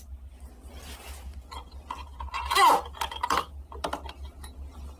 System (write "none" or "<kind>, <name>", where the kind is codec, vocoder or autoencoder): none